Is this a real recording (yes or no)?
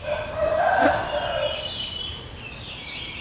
yes